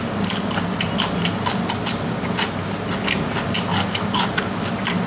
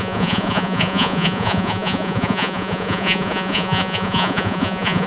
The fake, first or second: second